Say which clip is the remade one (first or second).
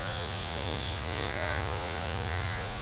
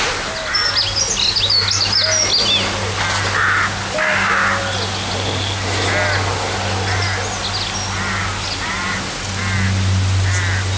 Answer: first